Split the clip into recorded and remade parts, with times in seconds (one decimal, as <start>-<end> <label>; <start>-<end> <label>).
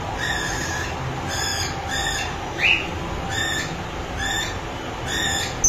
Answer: 0.0-5.7 recorded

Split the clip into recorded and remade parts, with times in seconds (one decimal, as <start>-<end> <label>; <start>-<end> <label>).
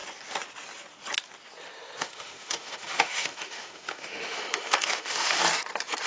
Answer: 0.0-2.0 recorded; 2.0-5.4 remade; 5.4-6.1 recorded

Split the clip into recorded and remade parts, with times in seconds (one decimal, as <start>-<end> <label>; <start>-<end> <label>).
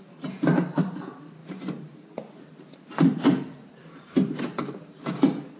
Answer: 0.0-1.4 recorded; 1.4-4.8 remade; 4.8-5.6 recorded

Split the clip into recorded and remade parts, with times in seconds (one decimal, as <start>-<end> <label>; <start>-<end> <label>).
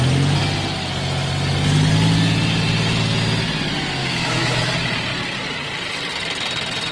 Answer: 0.0-4.0 recorded; 4.0-4.6 remade; 4.6-6.9 recorded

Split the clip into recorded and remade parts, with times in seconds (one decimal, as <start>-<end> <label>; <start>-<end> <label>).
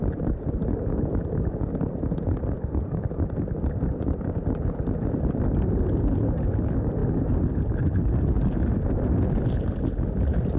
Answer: 0.0-10.6 recorded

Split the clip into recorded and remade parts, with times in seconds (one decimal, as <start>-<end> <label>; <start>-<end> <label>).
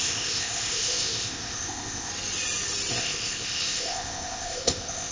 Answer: 0.0-2.1 remade; 2.1-3.0 recorded; 3.0-5.1 remade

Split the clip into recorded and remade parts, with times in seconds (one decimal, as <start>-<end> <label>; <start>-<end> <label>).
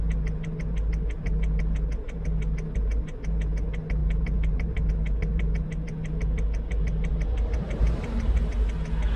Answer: 0.0-4.0 recorded; 4.0-4.9 remade; 4.9-7.1 recorded; 7.1-8.4 remade; 8.4-9.2 recorded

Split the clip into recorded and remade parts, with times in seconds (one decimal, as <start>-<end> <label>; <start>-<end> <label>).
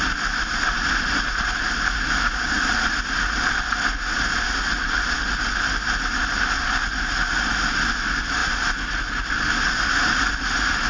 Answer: 0.0-10.9 recorded